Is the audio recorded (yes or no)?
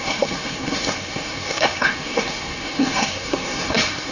no